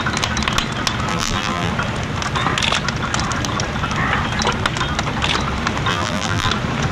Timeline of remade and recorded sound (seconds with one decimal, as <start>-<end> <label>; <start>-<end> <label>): 0.0-1.1 recorded; 1.1-1.7 remade; 1.7-5.9 recorded; 5.9-6.5 remade; 6.5-6.9 recorded